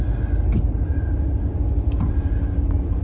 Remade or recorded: recorded